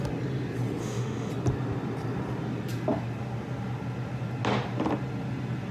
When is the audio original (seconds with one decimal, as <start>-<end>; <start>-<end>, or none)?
0.0-0.8; 1.3-5.7